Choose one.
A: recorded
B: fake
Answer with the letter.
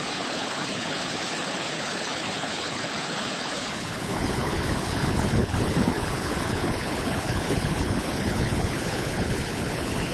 B